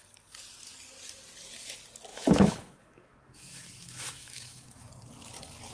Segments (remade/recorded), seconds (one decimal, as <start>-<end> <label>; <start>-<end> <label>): 0.0-2.1 recorded; 2.1-4.9 remade; 4.9-5.7 recorded